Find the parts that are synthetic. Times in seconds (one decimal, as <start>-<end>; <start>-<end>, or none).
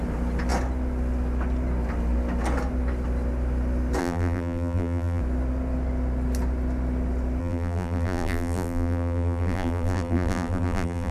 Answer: 4.0-5.2; 7.4-11.1